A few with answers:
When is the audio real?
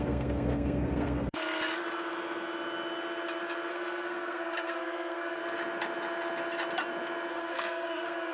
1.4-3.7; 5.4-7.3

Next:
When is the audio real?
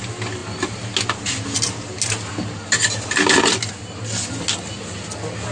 0.0-5.5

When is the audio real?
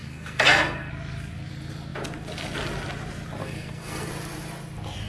0.9-3.4; 4.1-5.1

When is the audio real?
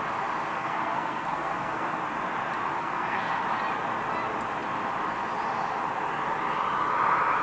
0.0-0.5; 2.0-2.8; 3.4-7.4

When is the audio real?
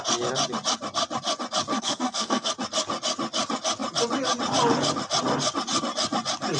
0.0-1.7; 2.5-6.6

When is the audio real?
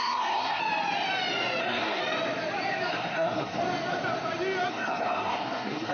0.6-1.6; 2.0-2.9; 3.6-4.7